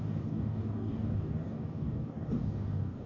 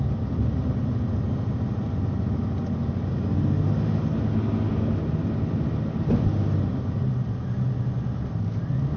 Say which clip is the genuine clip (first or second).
second